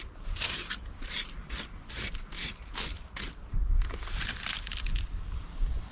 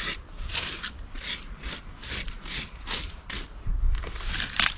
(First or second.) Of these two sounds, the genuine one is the first